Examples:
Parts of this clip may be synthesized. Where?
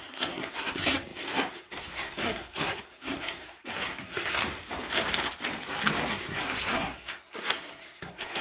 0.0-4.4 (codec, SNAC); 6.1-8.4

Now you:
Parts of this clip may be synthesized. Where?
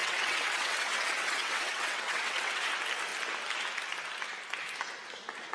0.0-2.7 (vocoder, WaveNeXt)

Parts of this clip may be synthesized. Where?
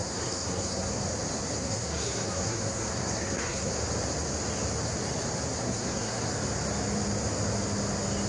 0.0-1.0 (codec, SNAC); 1.6-3.7; 5.6-6.3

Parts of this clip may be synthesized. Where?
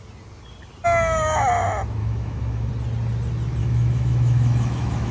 2.0-2.7 (autoencoder, DAC-VAE); 3.6-5.1